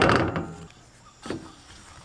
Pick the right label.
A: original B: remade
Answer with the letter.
A